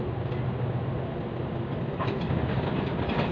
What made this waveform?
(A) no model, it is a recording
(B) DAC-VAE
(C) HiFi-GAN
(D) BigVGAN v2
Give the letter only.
A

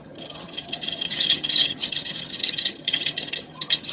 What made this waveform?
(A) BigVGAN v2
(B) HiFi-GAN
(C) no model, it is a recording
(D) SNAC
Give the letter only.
B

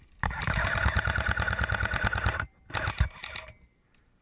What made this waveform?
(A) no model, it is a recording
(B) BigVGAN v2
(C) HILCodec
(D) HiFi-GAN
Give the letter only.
A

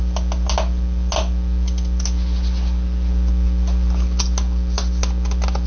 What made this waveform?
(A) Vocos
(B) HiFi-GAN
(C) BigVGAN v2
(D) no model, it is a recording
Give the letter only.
D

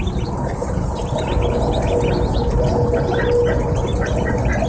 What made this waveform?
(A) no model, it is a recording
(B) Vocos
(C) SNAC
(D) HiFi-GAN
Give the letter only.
A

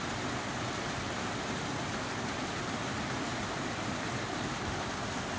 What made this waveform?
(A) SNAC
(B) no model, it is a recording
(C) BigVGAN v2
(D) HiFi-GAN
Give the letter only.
B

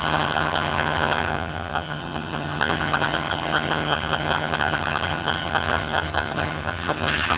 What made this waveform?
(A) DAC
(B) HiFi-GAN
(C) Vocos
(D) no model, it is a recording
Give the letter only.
B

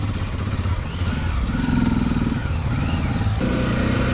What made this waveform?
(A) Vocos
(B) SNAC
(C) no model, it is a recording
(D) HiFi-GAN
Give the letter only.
C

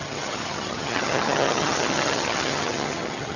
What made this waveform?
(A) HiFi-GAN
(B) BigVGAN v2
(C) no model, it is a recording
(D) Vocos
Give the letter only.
A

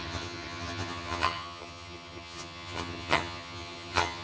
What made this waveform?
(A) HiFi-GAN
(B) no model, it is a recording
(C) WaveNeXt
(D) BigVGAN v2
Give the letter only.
A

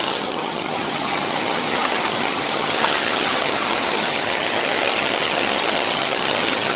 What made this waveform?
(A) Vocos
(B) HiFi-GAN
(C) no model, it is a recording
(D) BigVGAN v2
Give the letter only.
B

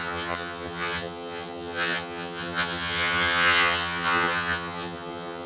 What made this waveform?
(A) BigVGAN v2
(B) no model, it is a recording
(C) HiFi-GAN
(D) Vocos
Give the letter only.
C